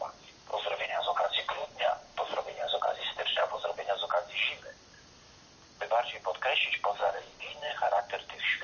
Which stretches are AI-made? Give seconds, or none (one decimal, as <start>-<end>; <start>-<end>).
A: 0.5-3.9; 7.0-8.0